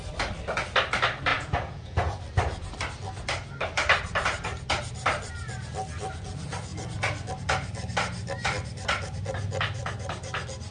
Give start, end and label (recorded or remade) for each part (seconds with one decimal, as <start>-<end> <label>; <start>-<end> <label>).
0.0-1.3 recorded; 1.3-2.2 remade; 2.2-10.7 recorded